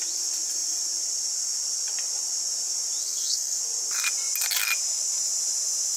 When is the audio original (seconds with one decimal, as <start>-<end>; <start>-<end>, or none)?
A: 0.0-3.0; 3.6-6.0